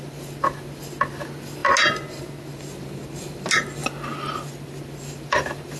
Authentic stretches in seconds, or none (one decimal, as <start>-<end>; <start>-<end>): 0.0-5.8